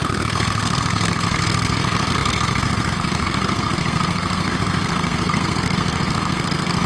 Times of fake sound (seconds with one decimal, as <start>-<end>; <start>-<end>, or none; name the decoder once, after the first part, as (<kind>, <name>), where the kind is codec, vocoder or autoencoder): 0.0-6.9 (codec, SNAC)

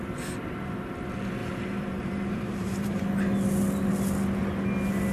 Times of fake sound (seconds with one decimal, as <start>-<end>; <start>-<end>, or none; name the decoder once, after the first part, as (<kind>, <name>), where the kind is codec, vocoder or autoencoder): 1.4-3.0 (vocoder, BigVGAN v2)

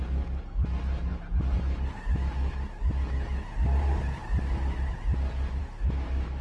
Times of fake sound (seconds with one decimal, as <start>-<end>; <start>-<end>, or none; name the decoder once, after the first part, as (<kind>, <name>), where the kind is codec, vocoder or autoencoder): 5.6-6.4 (autoencoder, DAC-VAE)

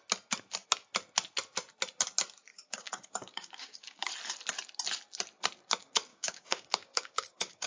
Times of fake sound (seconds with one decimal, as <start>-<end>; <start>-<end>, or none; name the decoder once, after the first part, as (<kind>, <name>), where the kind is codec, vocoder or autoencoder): 2.5-4.1 (codec, DAC); 6.1-7.7

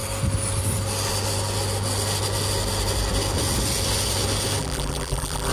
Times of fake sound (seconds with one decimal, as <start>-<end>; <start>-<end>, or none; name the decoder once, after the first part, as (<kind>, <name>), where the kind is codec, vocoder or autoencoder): 4.6-5.5 (vocoder, BigVGAN v2)

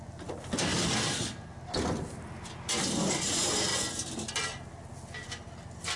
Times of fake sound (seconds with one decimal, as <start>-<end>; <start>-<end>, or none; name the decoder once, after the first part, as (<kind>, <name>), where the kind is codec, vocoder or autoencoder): none